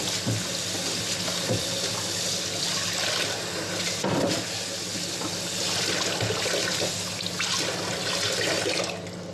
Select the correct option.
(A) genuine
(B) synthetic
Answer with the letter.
A